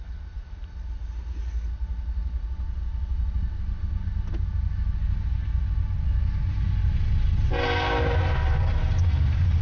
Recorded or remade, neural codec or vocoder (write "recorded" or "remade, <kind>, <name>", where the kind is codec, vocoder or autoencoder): recorded